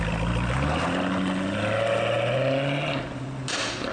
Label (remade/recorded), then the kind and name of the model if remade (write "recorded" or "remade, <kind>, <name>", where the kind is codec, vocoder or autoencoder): recorded